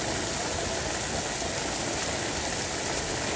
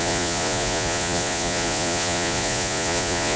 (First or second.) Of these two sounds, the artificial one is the second